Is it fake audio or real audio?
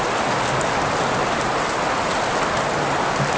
real